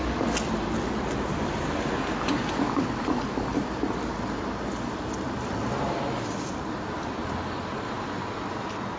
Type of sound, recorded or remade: recorded